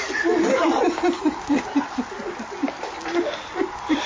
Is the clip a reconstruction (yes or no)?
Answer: no